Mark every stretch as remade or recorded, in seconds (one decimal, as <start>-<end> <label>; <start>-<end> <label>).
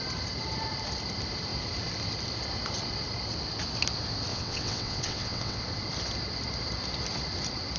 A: 0.0-4.3 recorded; 4.3-5.6 remade; 5.6-7.8 recorded